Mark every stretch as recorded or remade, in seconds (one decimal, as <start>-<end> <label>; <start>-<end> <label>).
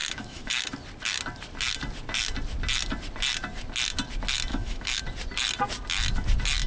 0.0-0.5 remade; 0.5-4.5 recorded; 4.5-5.0 remade; 5.0-6.7 recorded